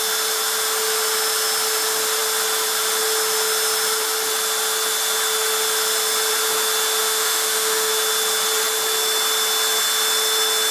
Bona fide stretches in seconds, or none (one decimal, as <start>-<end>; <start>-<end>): 0.0-7.0; 7.9-10.7